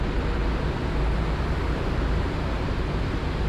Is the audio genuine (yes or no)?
yes